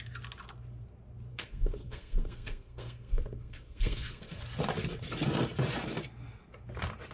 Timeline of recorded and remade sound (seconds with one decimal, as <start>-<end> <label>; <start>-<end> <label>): 0.0-1.3 recorded; 1.3-4.4 remade; 4.4-7.1 recorded